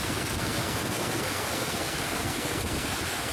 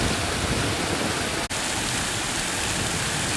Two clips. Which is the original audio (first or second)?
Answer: second